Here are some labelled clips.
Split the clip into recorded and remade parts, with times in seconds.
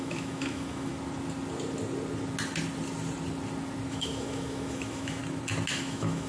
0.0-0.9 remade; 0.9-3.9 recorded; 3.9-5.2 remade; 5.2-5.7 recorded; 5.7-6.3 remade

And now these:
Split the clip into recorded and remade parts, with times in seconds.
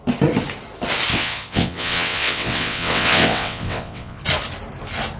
0.0-1.1 recorded; 1.1-4.2 remade; 4.2-5.2 recorded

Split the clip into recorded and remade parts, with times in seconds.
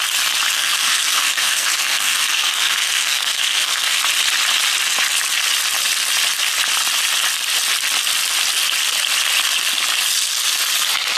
0.0-0.5 recorded; 0.5-4.0 remade; 4.0-11.2 recorded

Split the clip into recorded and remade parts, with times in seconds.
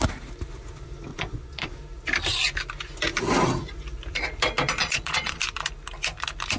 0.0-1.1 recorded; 1.1-1.7 remade; 1.7-4.8 recorded; 4.8-5.4 remade; 5.4-6.6 recorded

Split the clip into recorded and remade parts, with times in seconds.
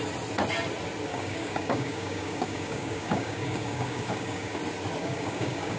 0.0-1.1 recorded; 1.1-4.6 remade; 4.6-5.0 recorded; 5.0-5.8 remade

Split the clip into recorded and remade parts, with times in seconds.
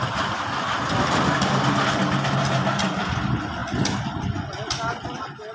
0.0-5.5 recorded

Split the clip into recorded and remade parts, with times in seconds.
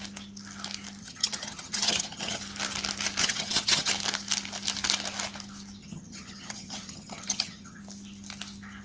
0.0-1.0 recorded; 1.0-2.4 remade; 2.4-3.2 recorded; 3.2-3.9 remade; 3.9-5.8 recorded; 5.8-7.8 remade; 7.8-8.8 recorded